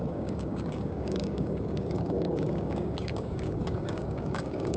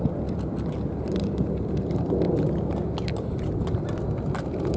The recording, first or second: second